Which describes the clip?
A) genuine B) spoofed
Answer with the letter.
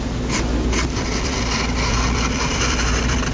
B